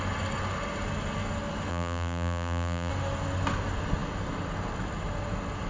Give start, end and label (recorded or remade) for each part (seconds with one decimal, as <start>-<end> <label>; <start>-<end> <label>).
0.0-1.7 recorded; 1.7-2.9 remade; 2.9-5.7 recorded